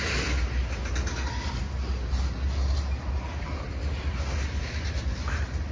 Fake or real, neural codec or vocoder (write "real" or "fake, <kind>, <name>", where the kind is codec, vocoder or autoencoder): real